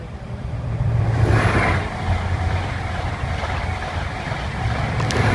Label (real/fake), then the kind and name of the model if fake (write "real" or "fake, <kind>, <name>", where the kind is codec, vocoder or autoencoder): fake, vocoder, BigVGAN v2